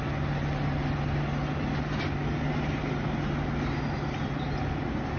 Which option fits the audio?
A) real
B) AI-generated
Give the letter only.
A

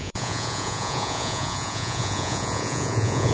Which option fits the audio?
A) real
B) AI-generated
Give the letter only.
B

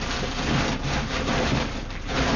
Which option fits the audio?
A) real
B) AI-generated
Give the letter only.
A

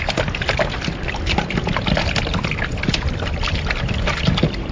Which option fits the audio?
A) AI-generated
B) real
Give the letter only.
B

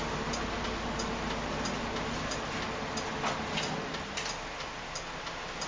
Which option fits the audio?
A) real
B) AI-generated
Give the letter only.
A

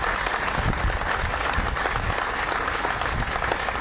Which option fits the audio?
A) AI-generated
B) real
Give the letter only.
B